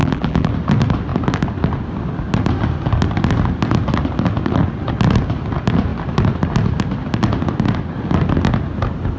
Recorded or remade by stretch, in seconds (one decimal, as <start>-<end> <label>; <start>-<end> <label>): 0.0-0.5 remade; 0.5-9.2 recorded